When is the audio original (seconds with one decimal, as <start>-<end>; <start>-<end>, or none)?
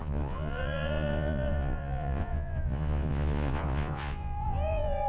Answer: none